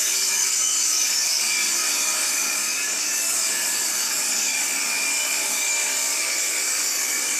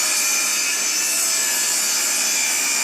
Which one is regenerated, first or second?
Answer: first